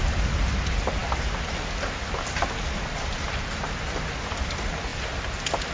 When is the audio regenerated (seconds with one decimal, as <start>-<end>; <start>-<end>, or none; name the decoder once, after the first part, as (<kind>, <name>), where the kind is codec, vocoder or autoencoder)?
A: none